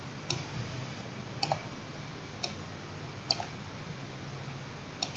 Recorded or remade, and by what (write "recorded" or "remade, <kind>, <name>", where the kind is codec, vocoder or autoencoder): recorded